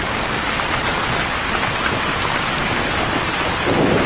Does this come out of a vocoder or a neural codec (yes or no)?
no